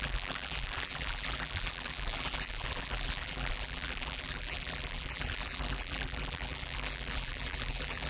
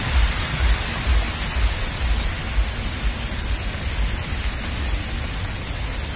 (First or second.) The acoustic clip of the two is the second